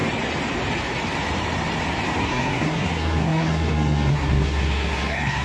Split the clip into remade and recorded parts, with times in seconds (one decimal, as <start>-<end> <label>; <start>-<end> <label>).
0.0-2.2 recorded; 2.2-5.4 remade